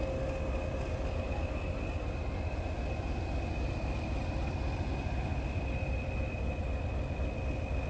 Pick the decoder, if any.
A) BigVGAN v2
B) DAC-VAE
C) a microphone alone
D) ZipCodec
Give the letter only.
C